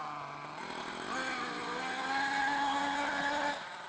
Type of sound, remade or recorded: recorded